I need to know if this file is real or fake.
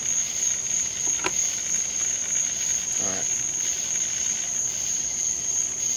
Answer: real